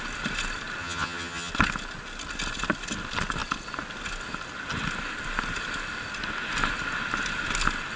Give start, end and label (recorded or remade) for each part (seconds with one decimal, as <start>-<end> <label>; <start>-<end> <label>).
0.0-0.8 recorded; 0.8-1.5 remade; 1.5-8.0 recorded